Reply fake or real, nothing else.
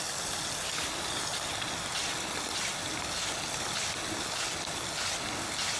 real